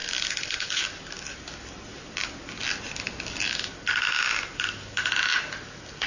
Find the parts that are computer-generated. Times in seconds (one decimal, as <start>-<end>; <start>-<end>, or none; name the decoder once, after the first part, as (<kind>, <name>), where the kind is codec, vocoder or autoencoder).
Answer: none